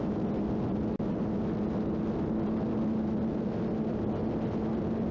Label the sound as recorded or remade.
recorded